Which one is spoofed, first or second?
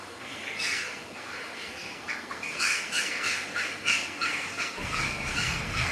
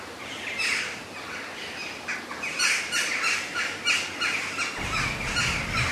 first